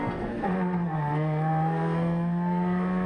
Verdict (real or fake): fake